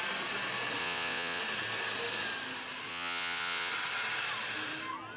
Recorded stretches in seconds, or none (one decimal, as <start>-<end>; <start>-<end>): 0.0-0.8; 1.4-2.9; 3.7-5.2